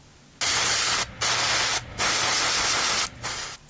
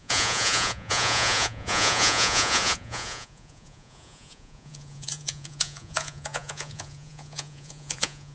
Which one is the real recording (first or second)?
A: first